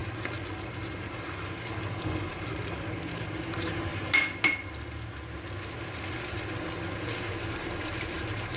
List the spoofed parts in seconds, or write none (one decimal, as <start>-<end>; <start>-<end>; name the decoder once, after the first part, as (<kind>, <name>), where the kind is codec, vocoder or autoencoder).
2.2-3.9 (vocoder, BigVGAN v2); 7.4-8.6